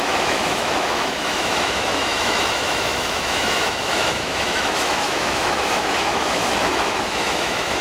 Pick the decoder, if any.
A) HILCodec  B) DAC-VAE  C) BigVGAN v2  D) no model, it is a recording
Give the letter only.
B